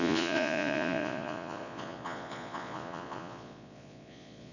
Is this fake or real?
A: fake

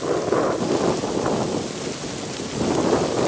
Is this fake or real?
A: real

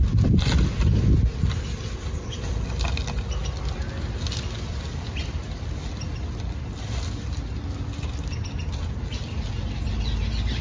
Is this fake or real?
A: real